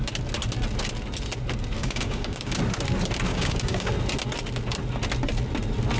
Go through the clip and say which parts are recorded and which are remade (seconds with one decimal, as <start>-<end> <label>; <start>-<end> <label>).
0.0-1.8 recorded; 1.8-2.6 remade; 2.6-3.3 recorded; 3.3-3.9 remade; 3.9-6.0 recorded

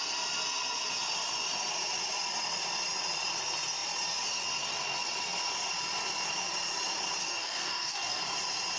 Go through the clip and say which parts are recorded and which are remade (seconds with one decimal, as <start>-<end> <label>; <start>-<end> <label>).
0.0-7.2 recorded; 7.2-8.2 remade; 8.2-8.8 recorded

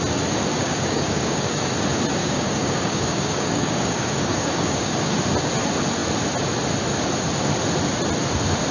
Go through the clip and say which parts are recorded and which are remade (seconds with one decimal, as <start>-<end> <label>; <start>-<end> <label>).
0.0-0.5 recorded; 0.5-1.7 remade; 1.7-2.2 recorded; 2.2-5.2 remade; 5.2-8.7 recorded

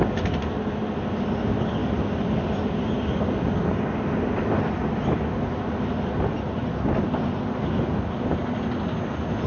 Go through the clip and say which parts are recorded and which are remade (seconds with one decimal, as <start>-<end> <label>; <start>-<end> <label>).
0.0-9.5 recorded

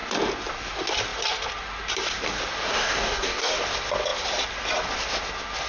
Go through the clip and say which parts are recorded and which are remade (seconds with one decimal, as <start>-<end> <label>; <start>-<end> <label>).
0.0-2.7 recorded; 2.7-3.5 remade; 3.5-5.7 recorded

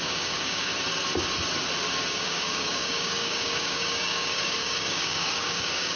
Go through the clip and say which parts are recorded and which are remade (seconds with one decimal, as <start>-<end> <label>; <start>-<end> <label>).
0.0-0.7 remade; 0.7-2.1 recorded; 2.1-6.0 remade

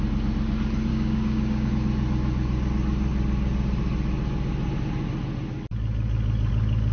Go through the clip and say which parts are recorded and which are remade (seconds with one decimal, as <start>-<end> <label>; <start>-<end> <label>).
0.0-0.9 recorded; 0.9-1.7 remade; 1.7-6.9 recorded